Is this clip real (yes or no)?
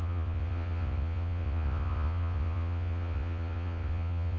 no